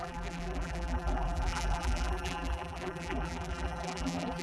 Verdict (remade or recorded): remade